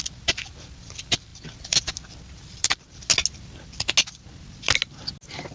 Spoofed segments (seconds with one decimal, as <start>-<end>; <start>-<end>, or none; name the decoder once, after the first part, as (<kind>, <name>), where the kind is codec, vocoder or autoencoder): none